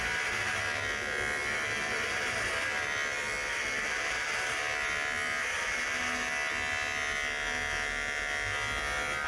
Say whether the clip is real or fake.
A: real